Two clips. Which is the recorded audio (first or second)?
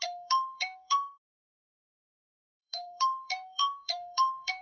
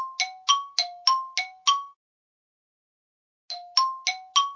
second